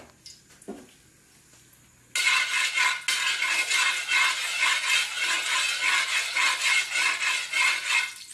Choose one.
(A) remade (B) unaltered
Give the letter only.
B